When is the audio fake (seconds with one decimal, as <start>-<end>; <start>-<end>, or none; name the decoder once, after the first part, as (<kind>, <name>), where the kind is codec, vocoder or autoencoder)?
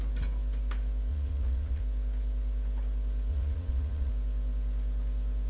1.1-1.8 (vocoder, Vocos); 3.3-4.1